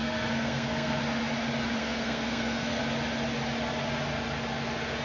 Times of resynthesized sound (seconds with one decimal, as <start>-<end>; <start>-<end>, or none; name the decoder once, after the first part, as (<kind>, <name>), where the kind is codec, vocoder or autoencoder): 0.0-1.0 (codec, SNAC); 1.8-2.8